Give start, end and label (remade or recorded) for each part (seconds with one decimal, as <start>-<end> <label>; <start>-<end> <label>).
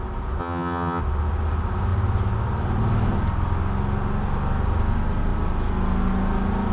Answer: 0.0-0.4 recorded; 0.4-1.0 remade; 1.0-6.7 recorded